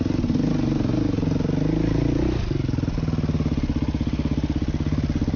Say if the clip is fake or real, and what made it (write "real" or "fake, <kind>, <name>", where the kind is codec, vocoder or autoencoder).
real